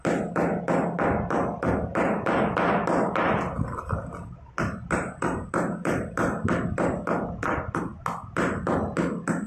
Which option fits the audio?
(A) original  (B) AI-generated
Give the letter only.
A